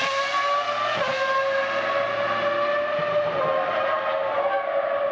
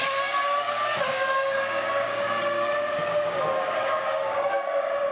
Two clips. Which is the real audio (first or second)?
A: first